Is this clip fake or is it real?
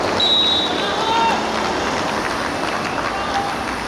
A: real